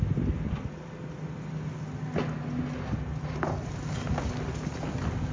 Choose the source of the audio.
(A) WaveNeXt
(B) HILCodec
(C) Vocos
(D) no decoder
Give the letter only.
D